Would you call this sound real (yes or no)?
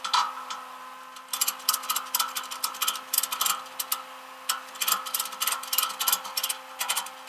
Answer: yes